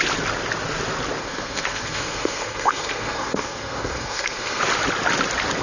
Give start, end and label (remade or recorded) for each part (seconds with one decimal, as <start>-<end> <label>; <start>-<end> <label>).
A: 0.0-1.2 recorded; 1.2-4.6 remade; 4.6-5.6 recorded